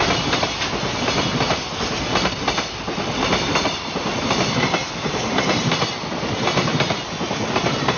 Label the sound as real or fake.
real